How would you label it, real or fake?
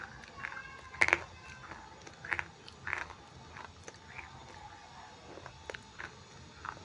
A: real